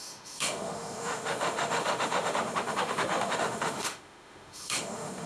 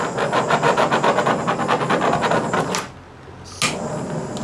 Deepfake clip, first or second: first